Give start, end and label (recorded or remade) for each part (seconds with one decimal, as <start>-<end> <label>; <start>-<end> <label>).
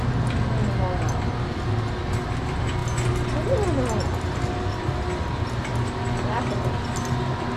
0.0-7.6 recorded